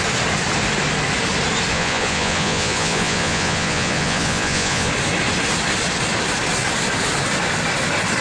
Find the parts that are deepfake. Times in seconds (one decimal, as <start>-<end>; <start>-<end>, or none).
1.7-4.9